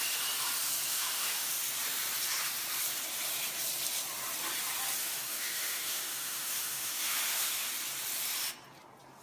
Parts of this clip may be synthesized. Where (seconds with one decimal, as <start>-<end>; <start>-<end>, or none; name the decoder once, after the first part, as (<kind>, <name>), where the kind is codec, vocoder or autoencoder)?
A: 0.9-1.5 (autoencoder, DAC-VAE); 5.0-7.7